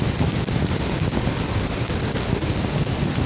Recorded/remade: recorded